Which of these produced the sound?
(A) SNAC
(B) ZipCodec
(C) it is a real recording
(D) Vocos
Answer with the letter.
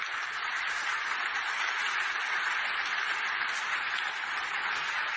C